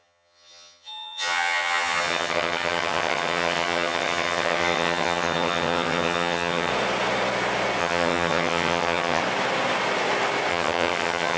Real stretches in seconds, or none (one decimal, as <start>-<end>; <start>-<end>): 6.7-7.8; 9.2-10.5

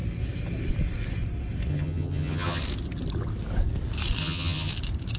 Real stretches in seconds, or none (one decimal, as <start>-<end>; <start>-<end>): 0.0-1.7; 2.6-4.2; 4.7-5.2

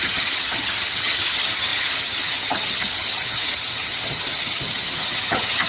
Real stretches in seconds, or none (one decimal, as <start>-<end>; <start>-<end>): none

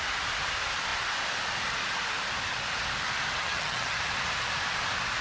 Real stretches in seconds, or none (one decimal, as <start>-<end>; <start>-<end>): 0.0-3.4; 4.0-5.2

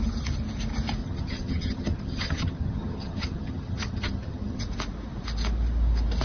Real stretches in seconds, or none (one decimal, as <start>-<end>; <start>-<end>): 0.0-1.0; 4.6-6.2

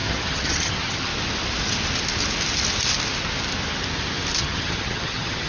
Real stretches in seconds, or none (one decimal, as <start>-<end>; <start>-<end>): 1.1-4.4